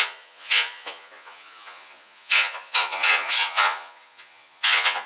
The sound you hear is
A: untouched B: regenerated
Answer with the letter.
B